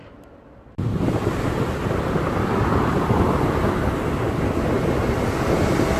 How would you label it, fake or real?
real